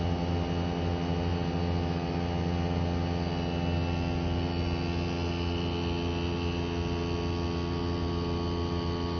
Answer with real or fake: real